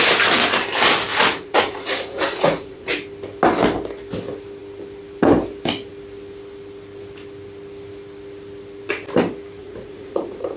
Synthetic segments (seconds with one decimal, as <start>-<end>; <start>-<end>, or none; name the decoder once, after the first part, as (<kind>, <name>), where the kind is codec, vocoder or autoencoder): 1.1-2.9 (vocoder, Vocos); 9.6-10.6